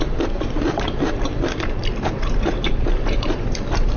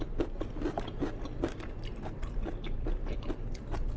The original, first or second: second